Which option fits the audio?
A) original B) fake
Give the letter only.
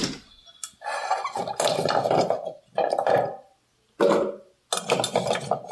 A